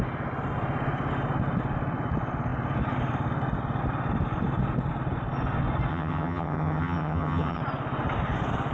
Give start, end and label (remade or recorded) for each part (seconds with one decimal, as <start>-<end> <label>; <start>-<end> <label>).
0.0-5.9 recorded; 5.9-7.6 remade; 7.6-8.7 recorded